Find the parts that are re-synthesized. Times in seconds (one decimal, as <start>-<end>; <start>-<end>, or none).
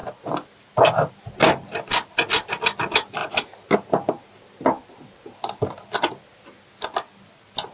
none